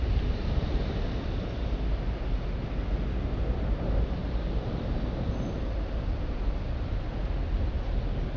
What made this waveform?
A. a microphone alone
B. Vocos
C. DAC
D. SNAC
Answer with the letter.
A